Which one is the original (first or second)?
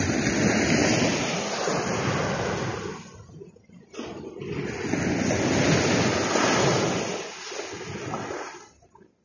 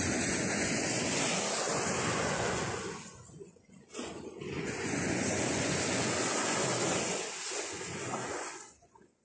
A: first